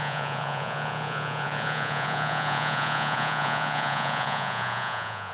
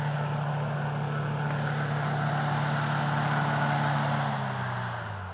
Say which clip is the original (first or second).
second